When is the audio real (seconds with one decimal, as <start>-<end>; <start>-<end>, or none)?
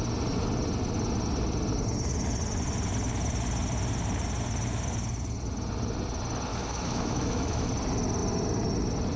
0.0-6.5; 7.7-9.2